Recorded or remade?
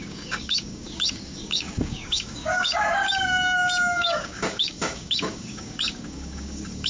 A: remade